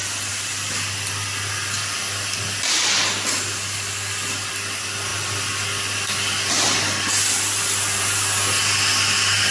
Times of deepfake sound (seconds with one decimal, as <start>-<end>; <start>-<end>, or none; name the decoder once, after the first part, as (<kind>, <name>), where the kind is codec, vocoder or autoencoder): none